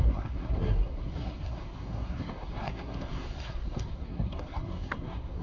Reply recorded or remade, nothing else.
remade